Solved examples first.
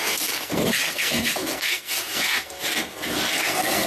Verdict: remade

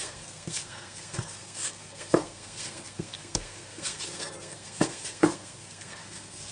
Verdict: remade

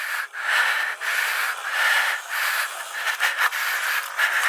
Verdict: recorded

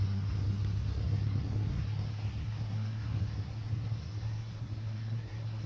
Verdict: remade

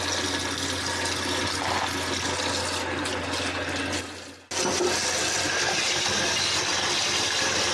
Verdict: recorded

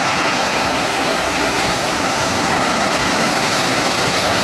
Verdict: remade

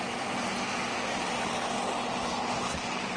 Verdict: recorded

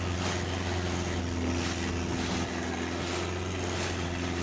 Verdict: recorded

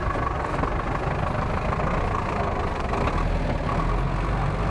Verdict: recorded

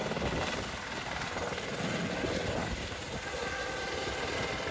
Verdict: recorded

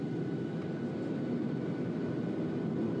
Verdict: recorded